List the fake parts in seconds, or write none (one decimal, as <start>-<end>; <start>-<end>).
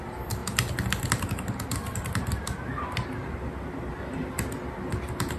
none